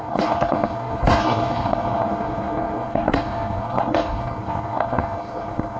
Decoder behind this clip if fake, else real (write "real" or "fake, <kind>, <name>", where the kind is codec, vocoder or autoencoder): fake, codec, SNAC